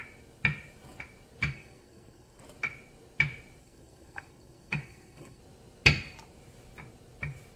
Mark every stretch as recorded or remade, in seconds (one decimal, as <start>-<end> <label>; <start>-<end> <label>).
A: 0.0-1.5 recorded; 1.5-2.4 remade; 2.4-3.6 recorded; 3.6-5.4 remade; 5.4-7.6 recorded